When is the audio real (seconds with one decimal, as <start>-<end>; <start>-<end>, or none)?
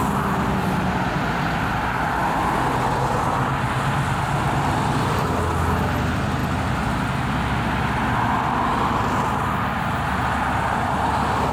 0.0-11.5